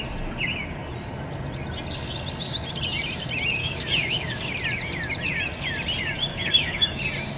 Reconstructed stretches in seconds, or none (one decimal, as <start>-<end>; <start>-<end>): 3.6-4.5; 6.3-7.0